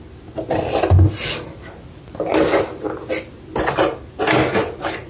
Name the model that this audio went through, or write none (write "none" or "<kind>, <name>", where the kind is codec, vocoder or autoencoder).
none